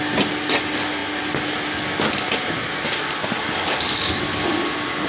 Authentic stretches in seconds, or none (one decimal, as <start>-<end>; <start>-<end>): 0.0-5.1